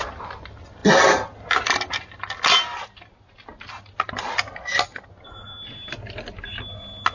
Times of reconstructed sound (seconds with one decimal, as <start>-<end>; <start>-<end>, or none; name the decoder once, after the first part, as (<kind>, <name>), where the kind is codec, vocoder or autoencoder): none